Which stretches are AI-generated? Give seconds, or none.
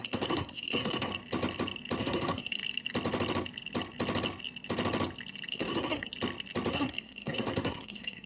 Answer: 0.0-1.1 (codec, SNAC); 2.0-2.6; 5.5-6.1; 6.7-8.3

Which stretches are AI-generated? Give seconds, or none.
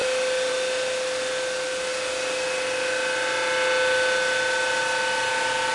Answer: none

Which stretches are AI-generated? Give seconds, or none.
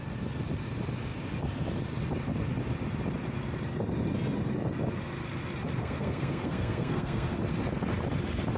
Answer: 5.8-7.4 (codec, SNAC)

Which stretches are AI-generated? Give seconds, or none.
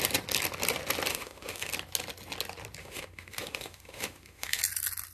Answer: 1.1-1.7 (autoencoder, DAC-VAE); 2.8-4.6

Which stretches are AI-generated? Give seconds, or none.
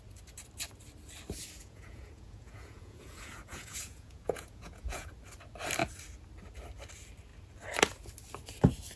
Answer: 1.6-5.1 (vocoder, Vocos)